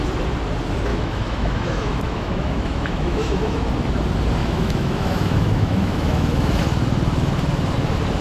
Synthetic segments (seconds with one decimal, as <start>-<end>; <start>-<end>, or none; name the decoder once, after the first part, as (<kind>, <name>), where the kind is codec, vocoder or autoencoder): 0.9-3.7 (autoencoder, DAC-VAE); 4.4-6.6